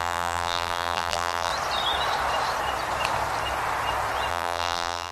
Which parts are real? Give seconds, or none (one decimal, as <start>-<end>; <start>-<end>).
1.5-4.3